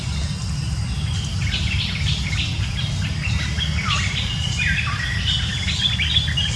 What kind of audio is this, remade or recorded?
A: recorded